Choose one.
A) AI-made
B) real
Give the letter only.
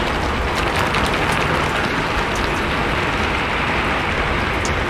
B